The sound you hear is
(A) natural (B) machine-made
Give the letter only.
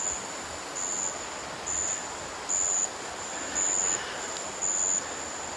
A